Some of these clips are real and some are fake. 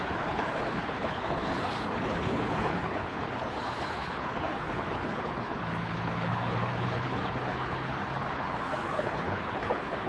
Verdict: fake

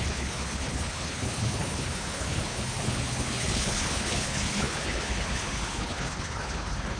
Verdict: fake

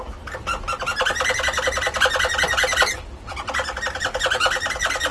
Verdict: real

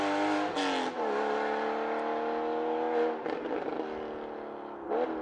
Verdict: real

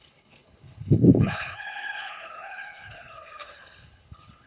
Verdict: fake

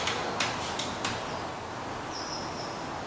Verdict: real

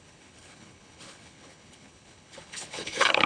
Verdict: fake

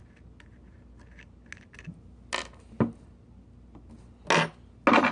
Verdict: real